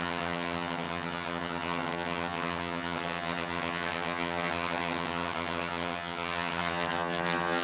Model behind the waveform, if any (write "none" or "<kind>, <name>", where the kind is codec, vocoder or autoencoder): vocoder, HiFi-GAN